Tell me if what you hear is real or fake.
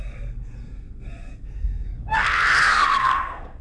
fake